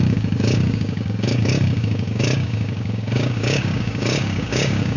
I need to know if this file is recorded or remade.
remade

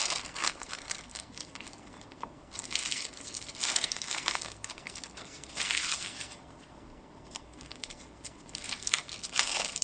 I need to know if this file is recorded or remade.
remade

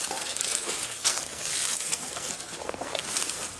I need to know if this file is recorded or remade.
remade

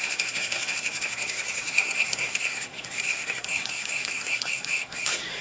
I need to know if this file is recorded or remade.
remade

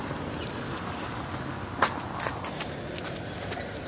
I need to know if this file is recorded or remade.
recorded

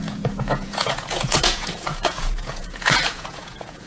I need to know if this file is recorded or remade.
remade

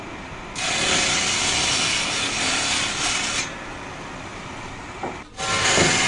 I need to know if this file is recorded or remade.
recorded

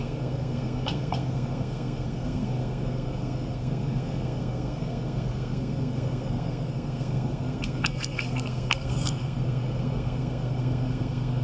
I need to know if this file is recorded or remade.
remade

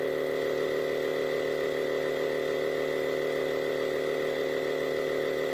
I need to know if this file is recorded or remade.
recorded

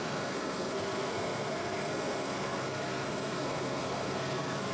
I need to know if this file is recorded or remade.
remade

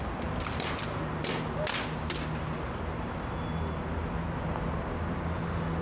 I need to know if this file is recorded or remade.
recorded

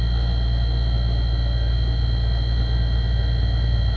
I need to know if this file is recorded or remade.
recorded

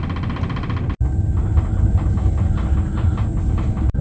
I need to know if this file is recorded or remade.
recorded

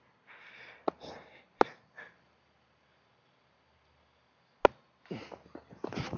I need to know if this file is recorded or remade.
recorded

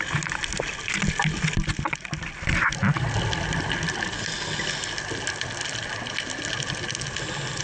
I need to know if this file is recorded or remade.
recorded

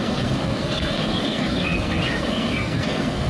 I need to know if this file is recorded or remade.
remade